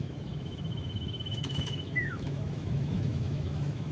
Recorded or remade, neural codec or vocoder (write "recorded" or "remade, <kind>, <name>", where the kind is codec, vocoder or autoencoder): remade, autoencoder, DAC-VAE